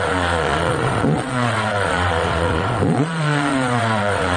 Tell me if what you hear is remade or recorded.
remade